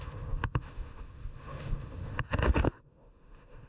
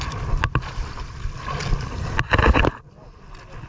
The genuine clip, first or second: second